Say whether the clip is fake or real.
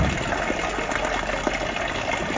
real